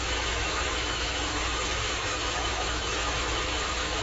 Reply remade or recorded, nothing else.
remade